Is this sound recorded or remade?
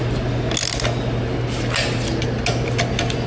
recorded